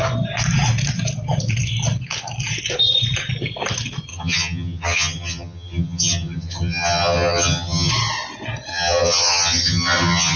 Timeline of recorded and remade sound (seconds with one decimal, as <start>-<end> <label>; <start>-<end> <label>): 0.0-4.1 recorded; 4.1-7.9 remade; 7.9-8.7 recorded; 8.7-10.4 remade